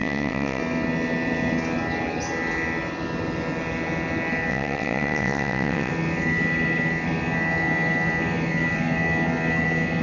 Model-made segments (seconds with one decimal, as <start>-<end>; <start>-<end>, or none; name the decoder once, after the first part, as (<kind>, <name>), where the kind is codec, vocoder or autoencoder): 0.0-0.6 (vocoder, WaveNeXt); 4.5-5.9